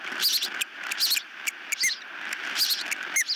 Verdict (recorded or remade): recorded